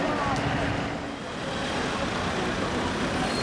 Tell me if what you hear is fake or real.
real